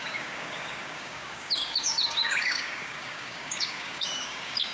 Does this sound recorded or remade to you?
remade